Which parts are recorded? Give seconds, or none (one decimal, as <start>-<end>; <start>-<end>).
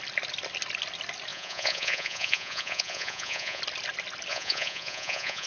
0.0-1.3; 3.6-4.3